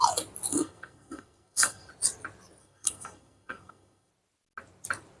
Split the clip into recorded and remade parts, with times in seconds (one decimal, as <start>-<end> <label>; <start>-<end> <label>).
0.0-0.5 recorded; 0.5-1.9 remade; 1.9-2.6 recorded; 2.6-4.1 remade; 4.1-5.2 recorded